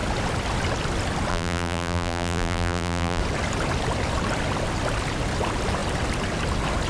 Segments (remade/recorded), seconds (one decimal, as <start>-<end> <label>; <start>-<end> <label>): 0.0-1.3 recorded; 1.3-3.2 remade; 3.2-6.9 recorded